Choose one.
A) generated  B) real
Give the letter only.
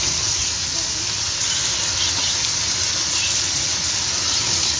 B